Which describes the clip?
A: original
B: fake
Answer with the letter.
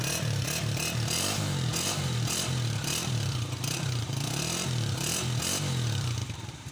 B